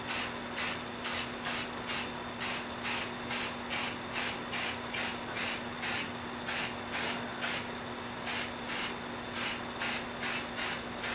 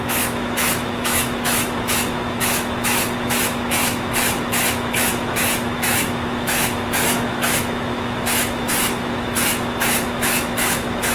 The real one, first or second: first